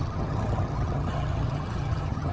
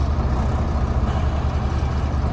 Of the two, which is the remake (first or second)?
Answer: first